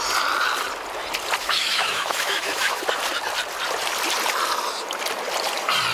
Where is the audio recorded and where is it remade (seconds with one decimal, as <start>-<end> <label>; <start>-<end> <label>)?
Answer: 0.0-1.4 recorded; 1.4-2.8 remade; 2.8-5.9 recorded